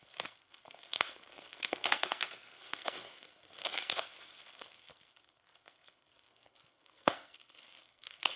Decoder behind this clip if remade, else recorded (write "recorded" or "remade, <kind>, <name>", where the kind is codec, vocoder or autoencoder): remade, codec, SNAC